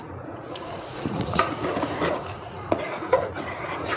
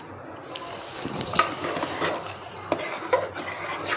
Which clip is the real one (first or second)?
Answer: second